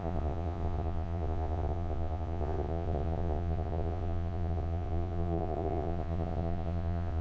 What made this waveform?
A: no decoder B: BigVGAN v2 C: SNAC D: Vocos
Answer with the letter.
D